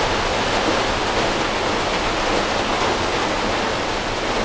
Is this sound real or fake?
real